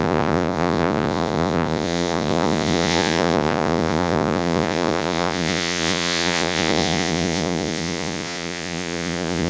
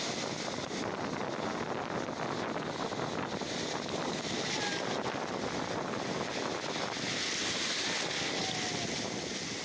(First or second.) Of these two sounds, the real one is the second